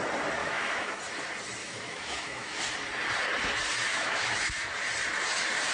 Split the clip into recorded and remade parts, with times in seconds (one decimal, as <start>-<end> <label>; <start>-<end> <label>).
0.0-0.4 recorded; 0.4-1.0 remade; 1.0-1.6 recorded; 1.6-2.6 remade; 2.6-3.9 recorded; 3.9-4.7 remade; 4.7-5.7 recorded